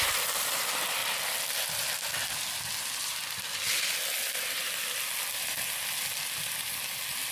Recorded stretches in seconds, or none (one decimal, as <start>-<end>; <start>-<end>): 0.0-7.3